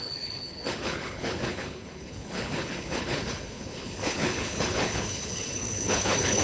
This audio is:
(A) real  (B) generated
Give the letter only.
B